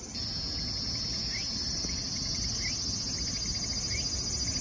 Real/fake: real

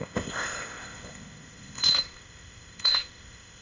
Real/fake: fake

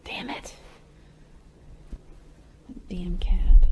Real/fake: fake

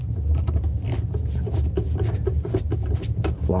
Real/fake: real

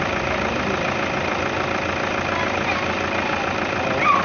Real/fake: real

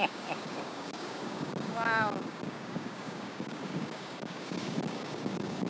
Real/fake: fake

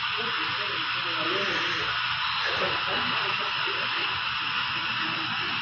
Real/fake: real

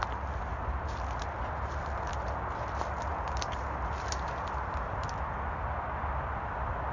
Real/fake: real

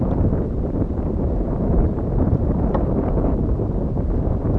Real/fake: fake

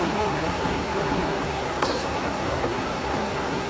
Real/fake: fake